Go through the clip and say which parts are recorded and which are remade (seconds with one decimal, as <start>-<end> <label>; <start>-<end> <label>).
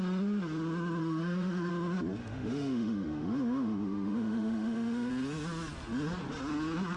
0.0-1.0 recorded; 1.0-1.7 remade; 1.7-2.2 recorded; 2.2-5.1 remade; 5.1-7.0 recorded